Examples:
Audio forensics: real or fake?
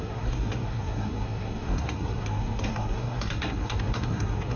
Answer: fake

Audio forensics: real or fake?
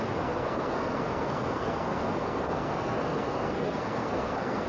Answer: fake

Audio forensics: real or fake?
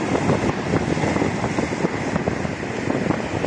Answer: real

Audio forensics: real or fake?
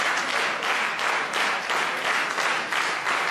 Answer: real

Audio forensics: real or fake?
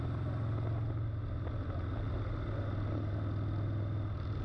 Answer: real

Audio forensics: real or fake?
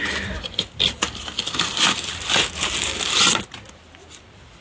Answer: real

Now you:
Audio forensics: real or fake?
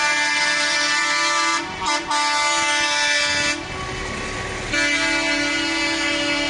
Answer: real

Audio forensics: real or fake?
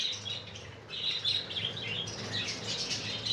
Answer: real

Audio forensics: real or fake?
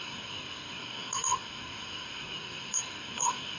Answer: fake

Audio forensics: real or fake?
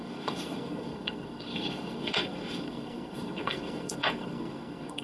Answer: fake